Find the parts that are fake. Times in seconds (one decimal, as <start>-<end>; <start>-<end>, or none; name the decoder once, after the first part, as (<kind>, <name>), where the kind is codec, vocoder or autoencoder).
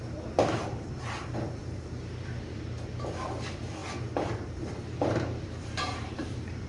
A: 0.0-6.7 (vocoder, BigVGAN v2)